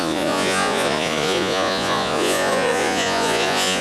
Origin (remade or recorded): remade